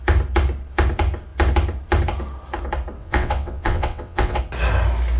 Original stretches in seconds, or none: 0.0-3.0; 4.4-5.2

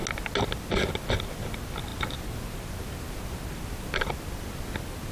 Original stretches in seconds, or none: 0.0-5.1

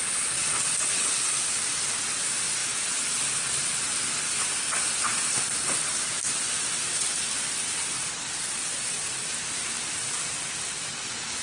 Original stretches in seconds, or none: 0.0-5.1; 9.1-11.4

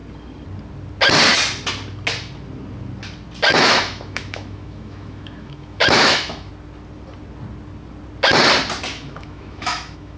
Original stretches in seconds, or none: 0.0-3.5; 6.5-8.9

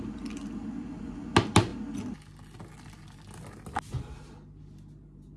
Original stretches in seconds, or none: 0.0-5.4

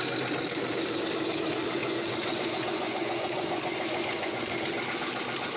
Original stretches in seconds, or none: 0.0-1.8; 4.8-5.6

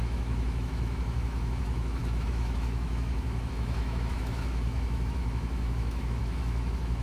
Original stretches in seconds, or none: none